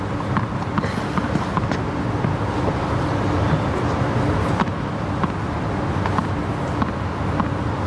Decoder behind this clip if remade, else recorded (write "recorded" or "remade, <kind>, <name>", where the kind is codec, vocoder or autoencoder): recorded